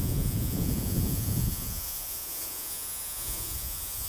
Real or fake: fake